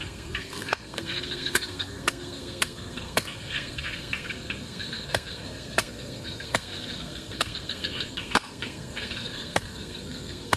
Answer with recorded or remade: remade